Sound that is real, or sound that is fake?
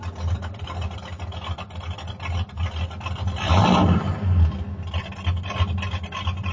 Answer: real